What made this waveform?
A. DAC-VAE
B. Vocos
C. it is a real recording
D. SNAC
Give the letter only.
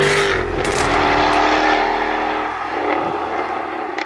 C